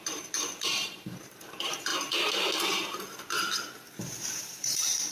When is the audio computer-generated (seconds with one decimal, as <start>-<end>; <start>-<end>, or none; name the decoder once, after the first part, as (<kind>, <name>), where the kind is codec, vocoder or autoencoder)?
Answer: 0.0-1.9 (vocoder, BigVGAN v2); 4.4-5.1